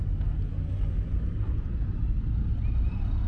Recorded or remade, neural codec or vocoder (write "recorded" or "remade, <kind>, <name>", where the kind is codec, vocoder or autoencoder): recorded